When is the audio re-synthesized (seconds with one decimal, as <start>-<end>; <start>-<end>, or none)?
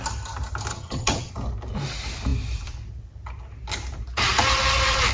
0.7-1.3